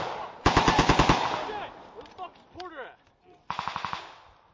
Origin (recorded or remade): recorded